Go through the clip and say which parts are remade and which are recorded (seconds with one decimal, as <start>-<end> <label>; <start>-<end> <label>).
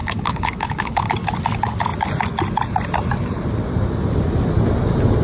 0.0-1.1 remade; 1.1-5.2 recorded